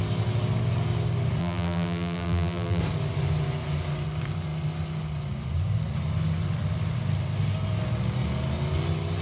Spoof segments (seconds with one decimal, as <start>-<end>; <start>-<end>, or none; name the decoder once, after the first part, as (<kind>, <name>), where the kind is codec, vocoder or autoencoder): 1.4-2.8 (vocoder, BigVGAN v2)